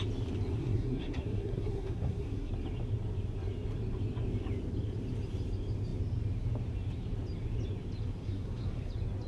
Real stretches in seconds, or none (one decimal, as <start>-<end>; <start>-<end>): 0.0-0.6; 2.5-8.2; 8.9-9.3